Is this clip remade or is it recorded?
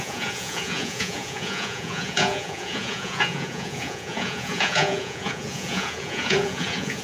remade